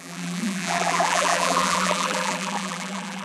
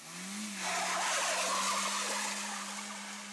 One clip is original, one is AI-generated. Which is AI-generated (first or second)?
first